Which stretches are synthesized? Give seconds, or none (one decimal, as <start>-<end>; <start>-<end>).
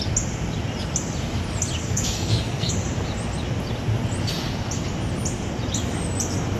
1.8-2.7